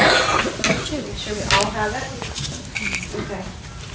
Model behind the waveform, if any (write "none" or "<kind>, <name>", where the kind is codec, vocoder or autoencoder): none